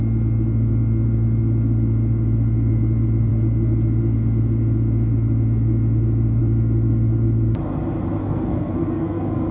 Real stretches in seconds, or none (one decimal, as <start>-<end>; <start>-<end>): 0.0-8.2

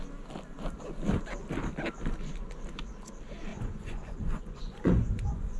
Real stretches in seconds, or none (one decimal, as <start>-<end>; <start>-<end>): 0.0-3.5

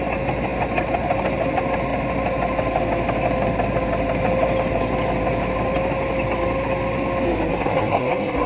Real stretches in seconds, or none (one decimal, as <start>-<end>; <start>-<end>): 0.0-7.5

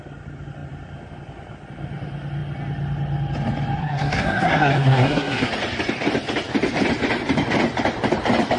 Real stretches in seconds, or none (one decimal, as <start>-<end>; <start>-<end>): 0.0-3.8; 5.5-8.6

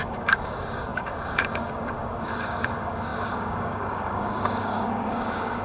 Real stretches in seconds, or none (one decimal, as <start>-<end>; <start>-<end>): none

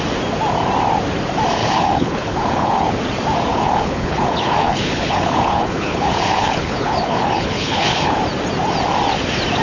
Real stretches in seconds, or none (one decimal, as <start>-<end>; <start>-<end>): 0.0-1.6; 2.9-3.5; 8.2-9.6